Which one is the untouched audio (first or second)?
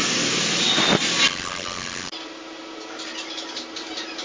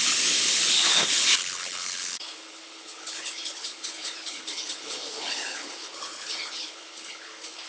first